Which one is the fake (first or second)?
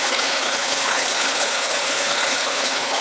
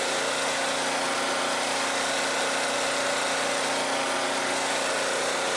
first